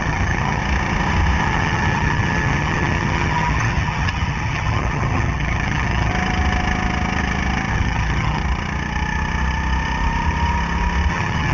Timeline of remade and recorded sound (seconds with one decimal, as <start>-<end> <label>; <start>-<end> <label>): 0.0-0.6 remade; 0.6-1.4 recorded; 1.4-6.1 remade; 6.1-7.7 recorded; 7.7-8.4 remade; 8.4-11.1 recorded; 11.1-11.5 remade